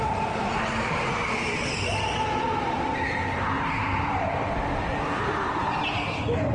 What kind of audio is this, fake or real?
fake